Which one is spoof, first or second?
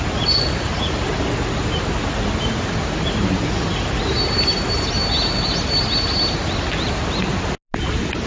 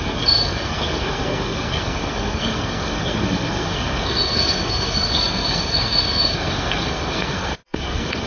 second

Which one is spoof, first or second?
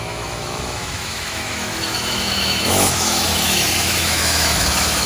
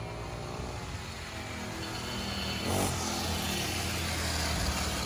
first